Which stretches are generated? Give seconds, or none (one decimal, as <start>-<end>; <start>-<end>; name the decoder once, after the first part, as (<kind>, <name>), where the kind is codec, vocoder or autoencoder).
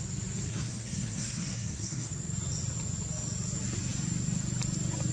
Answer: 0.5-2.1 (codec, SNAC)